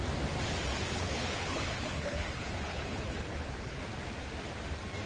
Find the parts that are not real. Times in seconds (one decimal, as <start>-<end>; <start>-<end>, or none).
0.7-3.8